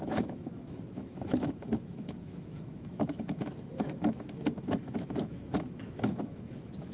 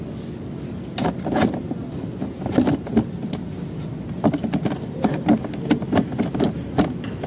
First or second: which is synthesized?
first